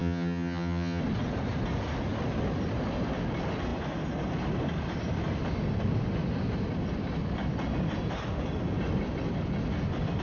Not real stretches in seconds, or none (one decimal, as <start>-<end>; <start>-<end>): 0.0-1.0